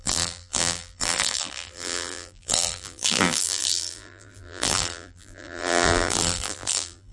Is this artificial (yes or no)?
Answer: yes